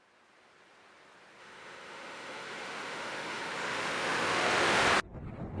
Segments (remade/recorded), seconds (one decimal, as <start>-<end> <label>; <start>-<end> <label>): 0.0-1.4 recorded; 1.4-4.8 remade; 4.8-5.6 recorded